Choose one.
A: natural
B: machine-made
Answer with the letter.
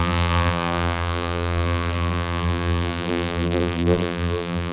B